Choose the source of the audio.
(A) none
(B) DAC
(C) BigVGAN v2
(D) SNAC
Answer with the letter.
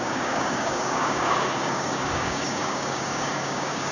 B